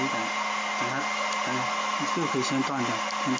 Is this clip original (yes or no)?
yes